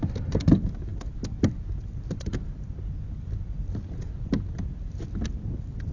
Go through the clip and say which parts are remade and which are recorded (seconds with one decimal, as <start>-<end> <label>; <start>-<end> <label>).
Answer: 0.0-5.9 recorded